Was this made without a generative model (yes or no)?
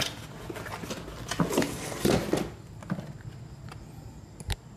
yes